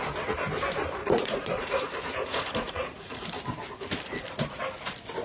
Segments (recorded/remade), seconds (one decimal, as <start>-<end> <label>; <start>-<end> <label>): 0.0-1.0 recorded; 1.0-3.2 remade; 3.2-5.2 recorded